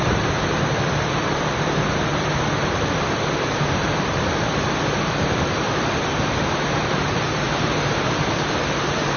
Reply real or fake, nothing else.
fake